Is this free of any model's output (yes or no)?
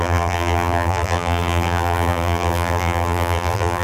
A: no